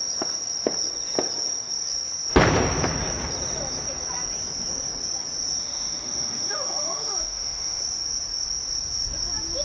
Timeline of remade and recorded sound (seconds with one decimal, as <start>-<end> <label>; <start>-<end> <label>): 0.0-5.6 recorded; 5.6-7.8 remade; 7.8-9.6 recorded